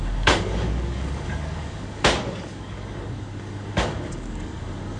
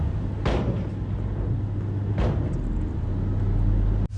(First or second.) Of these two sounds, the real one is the second